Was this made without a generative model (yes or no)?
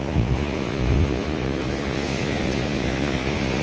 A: no